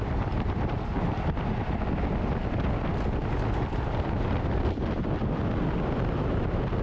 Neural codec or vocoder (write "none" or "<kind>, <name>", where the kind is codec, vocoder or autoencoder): none